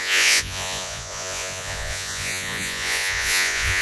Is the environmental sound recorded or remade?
remade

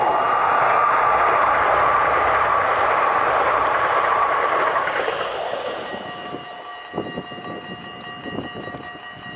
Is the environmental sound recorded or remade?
recorded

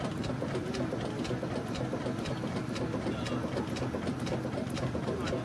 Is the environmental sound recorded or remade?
recorded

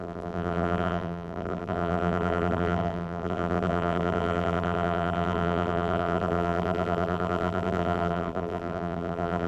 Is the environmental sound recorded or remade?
remade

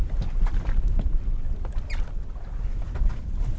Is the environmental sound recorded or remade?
recorded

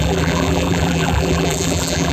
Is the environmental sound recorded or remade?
remade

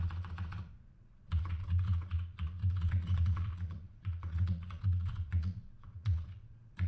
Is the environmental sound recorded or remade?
remade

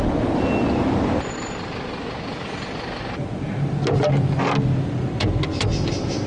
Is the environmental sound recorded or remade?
recorded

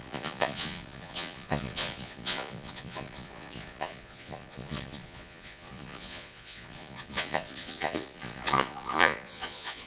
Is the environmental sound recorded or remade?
remade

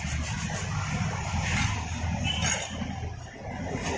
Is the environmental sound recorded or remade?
recorded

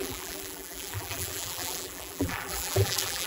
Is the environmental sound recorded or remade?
remade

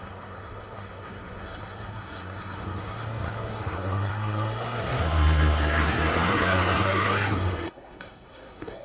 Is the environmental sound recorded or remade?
remade